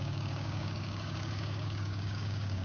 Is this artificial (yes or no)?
yes